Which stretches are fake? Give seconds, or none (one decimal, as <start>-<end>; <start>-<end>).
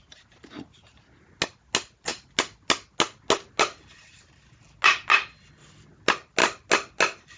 none